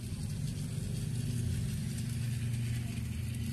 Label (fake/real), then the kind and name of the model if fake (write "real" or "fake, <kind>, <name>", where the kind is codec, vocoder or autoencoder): real